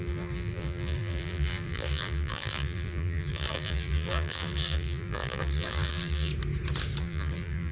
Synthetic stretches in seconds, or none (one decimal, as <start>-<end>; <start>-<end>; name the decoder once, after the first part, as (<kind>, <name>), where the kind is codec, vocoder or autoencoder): 0.0-6.3 (vocoder, BigVGAN v2); 7.0-7.7